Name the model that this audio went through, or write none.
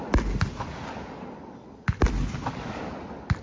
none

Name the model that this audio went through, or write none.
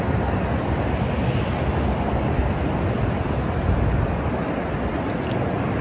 none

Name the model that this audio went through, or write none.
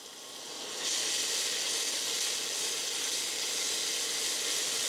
none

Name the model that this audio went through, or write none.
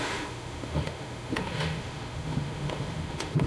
autoencoder, DAC-VAE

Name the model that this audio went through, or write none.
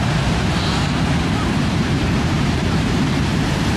vocoder, BigVGAN v2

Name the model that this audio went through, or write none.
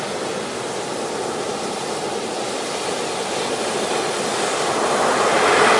none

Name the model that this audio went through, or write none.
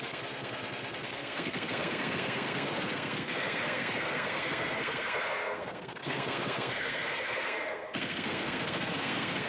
codec, SNAC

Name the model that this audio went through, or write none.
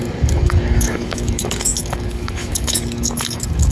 codec, DAC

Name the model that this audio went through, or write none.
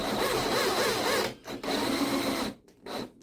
none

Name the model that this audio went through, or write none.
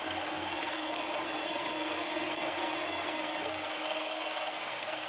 codec, SNAC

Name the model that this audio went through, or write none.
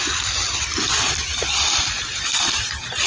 none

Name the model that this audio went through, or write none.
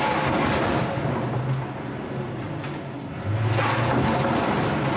none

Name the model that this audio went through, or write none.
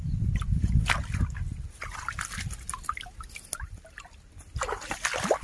none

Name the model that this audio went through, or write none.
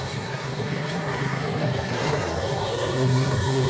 codec, SNAC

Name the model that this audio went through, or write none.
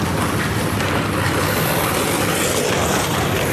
none